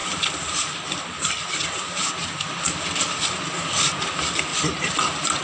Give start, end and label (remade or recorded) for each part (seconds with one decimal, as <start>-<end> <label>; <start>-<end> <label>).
0.0-3.2 remade; 3.2-4.5 recorded; 4.5-5.0 remade; 5.0-5.4 recorded